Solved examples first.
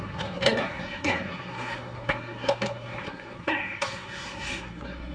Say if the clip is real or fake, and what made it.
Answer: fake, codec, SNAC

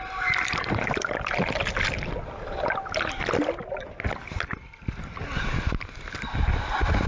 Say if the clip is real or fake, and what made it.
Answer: real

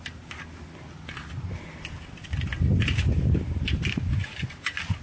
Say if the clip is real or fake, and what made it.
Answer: real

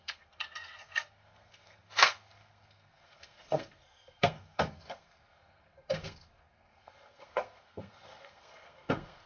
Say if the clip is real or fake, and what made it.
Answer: fake, codec, SNAC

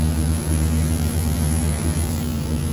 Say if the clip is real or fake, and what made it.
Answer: fake, vocoder, BigVGAN v2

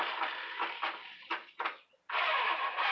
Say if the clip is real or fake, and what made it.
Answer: real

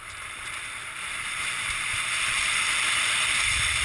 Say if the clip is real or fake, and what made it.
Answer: fake, vocoder, BigVGAN v2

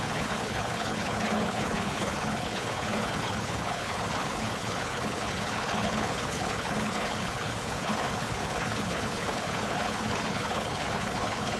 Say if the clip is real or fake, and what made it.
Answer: fake, codec, HILCodec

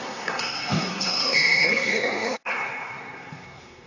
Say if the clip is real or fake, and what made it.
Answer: fake, codec, SNAC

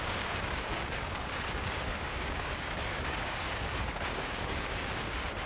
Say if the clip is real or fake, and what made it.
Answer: fake, codec, DAC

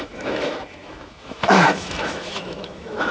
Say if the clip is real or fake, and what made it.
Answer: fake, autoencoder, DAC-VAE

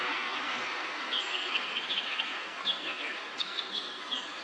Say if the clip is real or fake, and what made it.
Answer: fake, codec, SNAC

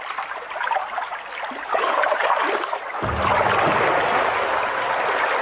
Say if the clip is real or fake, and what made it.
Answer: real